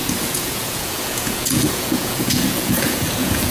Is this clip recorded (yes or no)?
no